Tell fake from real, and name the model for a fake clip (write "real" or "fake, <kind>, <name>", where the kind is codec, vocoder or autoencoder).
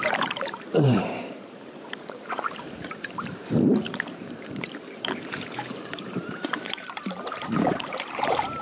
fake, vocoder, BigVGAN v2